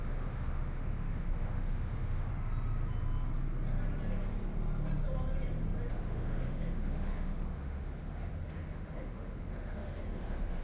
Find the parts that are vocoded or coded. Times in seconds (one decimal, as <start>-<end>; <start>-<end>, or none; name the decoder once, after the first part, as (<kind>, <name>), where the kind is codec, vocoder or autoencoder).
0.0-2.3 (autoencoder, DAC-VAE); 5.9-10.6